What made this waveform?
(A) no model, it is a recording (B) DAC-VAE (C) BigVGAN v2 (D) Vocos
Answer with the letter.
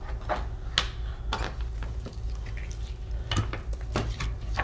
A